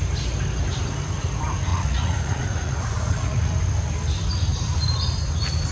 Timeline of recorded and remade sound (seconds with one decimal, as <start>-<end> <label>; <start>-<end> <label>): 0.0-1.7 recorded; 1.7-3.5 remade; 3.5-5.7 recorded